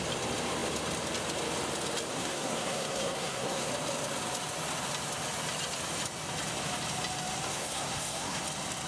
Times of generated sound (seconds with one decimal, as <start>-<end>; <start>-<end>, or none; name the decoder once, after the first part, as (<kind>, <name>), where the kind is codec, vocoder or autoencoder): 2.1-3.7 (codec, SNAC); 7.5-8.4